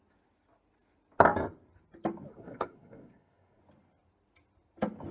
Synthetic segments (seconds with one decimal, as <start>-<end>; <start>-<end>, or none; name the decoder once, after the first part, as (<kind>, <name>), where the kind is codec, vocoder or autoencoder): 2.3-3.6 (codec, SNAC)